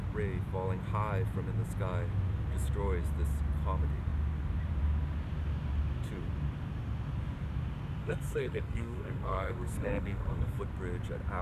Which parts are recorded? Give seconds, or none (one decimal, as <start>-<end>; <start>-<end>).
0.0-8.0; 10.6-11.4